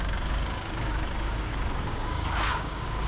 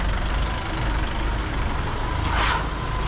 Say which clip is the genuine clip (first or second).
second